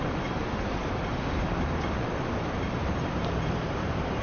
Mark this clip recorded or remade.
remade